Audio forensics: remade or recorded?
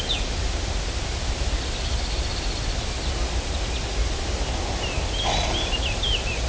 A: recorded